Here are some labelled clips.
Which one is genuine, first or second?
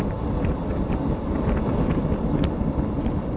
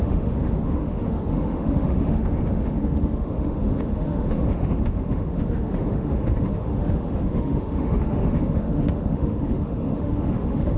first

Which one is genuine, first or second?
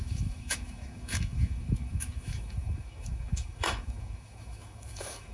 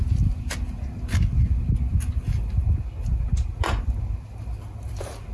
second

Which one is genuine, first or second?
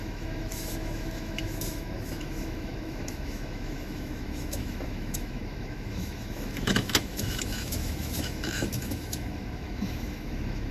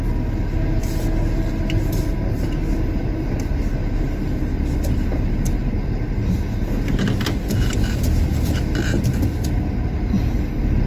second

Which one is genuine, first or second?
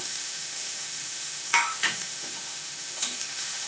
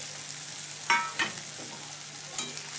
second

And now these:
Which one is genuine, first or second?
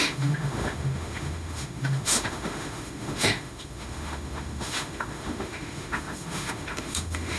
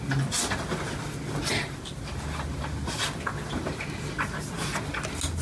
second